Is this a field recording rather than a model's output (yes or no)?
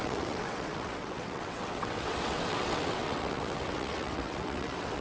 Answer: no